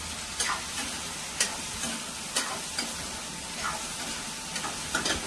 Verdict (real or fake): real